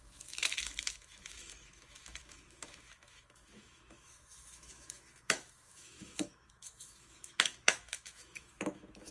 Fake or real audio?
fake